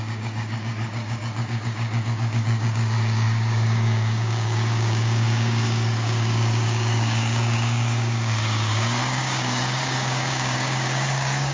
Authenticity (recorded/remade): remade